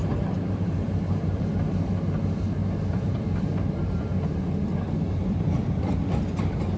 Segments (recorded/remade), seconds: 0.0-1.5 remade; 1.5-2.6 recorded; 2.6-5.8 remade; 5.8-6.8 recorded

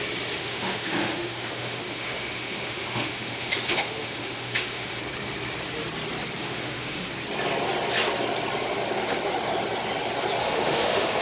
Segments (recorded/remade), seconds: 0.0-0.4 recorded; 0.4-5.0 remade; 5.0-6.4 recorded; 6.4-7.1 remade; 7.1-10.4 recorded; 10.4-11.2 remade

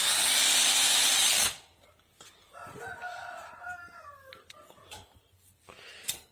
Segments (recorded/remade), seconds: 0.0-6.3 recorded

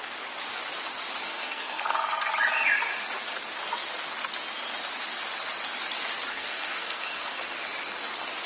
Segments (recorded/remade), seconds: 0.0-1.2 recorded; 1.2-2.3 remade; 2.3-6.3 recorded; 6.3-7.4 remade; 7.4-8.5 recorded